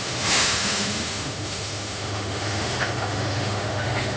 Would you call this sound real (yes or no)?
no